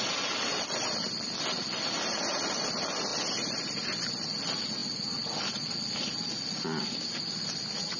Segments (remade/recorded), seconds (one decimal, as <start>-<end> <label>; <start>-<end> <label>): 0.0-8.0 recorded